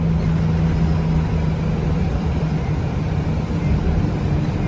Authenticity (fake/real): real